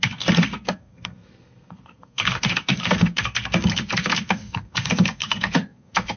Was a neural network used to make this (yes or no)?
yes